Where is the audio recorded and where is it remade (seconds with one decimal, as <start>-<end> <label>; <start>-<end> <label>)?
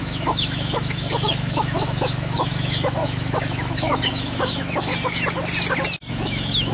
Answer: 0.0-4.9 remade; 4.9-6.1 recorded; 6.1-6.7 remade